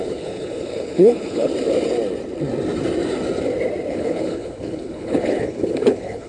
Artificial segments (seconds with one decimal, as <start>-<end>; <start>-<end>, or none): 0.0-1.5; 3.9-6.3